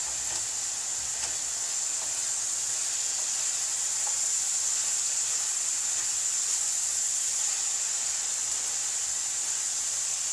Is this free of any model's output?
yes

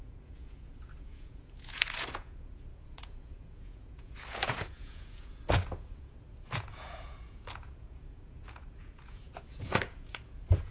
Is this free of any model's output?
no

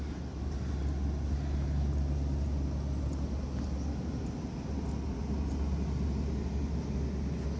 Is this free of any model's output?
yes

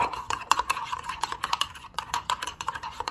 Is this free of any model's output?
no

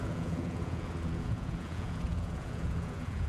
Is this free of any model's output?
no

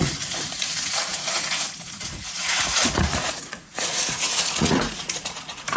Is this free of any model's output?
no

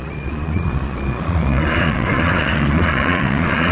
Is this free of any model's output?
no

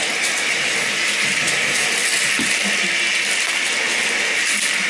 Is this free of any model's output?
yes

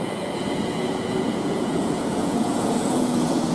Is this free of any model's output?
no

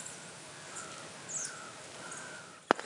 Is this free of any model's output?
yes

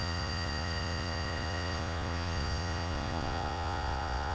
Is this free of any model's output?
no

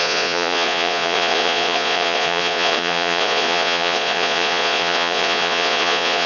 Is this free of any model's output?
no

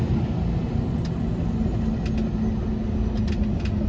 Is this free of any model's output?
yes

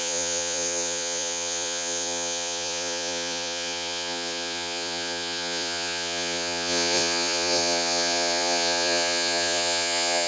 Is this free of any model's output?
no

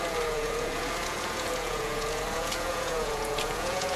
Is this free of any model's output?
no